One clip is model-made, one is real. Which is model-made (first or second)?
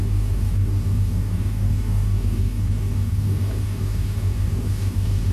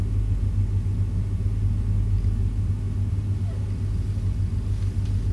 first